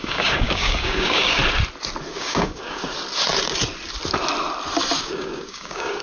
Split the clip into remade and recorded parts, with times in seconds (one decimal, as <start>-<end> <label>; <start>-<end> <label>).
0.0-1.4 remade; 1.4-2.1 recorded; 2.1-2.8 remade; 2.8-5.0 recorded; 5.0-6.0 remade